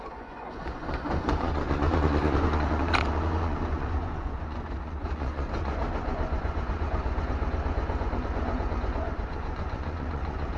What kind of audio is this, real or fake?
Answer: fake